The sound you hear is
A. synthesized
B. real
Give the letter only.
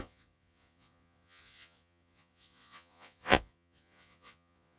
A